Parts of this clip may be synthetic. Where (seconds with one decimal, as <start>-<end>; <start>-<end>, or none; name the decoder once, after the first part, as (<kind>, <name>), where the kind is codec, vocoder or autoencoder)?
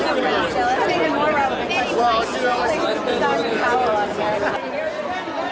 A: none